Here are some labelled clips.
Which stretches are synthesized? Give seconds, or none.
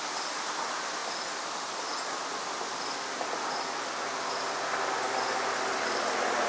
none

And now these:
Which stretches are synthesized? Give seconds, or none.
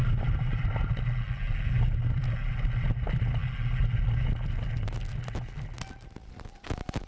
none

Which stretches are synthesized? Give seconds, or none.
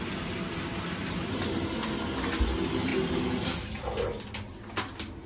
none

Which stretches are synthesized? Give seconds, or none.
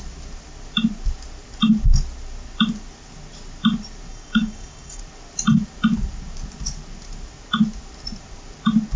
4.1-5.0 (codec, DAC)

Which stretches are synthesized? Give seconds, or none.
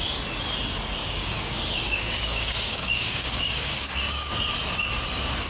1.0-4.3 (codec, DAC)